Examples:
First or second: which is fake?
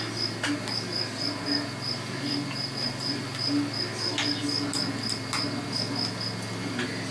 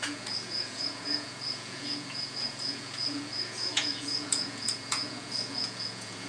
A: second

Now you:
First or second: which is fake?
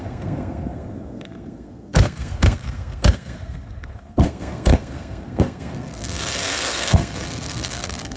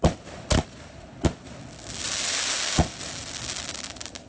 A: first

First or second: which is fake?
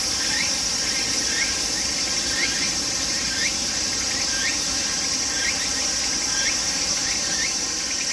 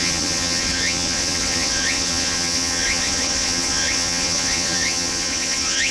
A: second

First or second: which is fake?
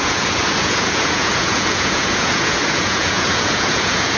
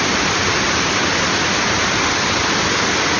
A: first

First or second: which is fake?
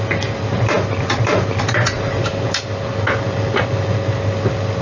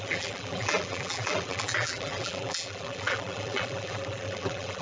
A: second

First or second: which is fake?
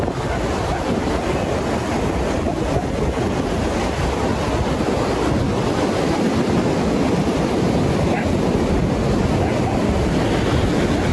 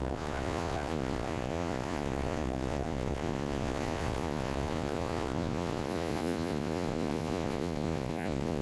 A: second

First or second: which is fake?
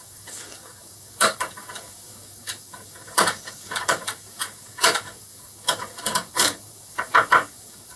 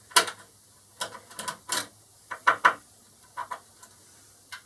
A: first